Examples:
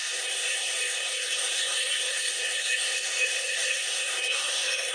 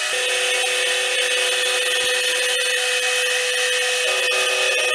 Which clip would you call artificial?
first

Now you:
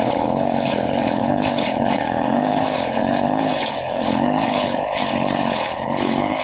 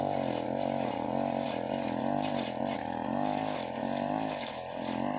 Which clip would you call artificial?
first